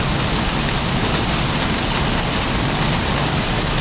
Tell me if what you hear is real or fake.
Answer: real